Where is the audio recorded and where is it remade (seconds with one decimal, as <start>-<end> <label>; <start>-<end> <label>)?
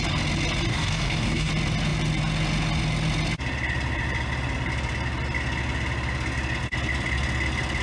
0.0-0.7 recorded; 0.7-1.5 remade; 1.5-7.8 recorded